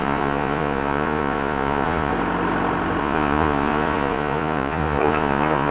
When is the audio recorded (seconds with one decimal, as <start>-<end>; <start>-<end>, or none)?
2.1-3.0